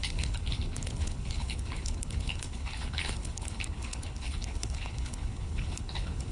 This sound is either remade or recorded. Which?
remade